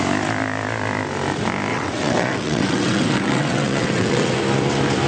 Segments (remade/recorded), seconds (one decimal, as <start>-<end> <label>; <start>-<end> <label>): 0.0-1.7 recorded; 1.7-4.4 remade; 4.4-5.1 recorded